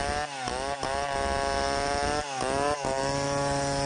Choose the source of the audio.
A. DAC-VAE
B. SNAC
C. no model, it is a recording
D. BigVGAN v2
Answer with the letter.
C